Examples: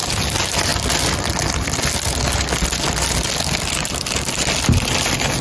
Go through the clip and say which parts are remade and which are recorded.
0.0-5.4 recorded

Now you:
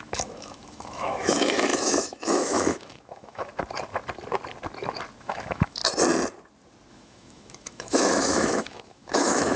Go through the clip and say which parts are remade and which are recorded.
0.0-3.5 remade; 3.5-5.2 recorded; 5.2-5.8 remade; 5.8-6.9 recorded; 6.9-9.6 remade

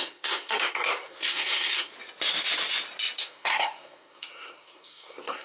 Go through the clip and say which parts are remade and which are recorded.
0.0-1.9 remade; 1.9-3.2 recorded; 3.2-5.4 remade

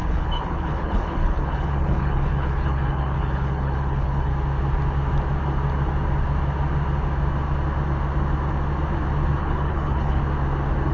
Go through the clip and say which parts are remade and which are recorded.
0.0-4.3 remade; 4.3-9.4 recorded; 9.4-10.2 remade; 10.2-10.9 recorded